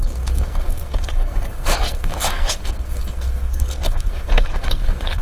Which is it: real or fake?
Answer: fake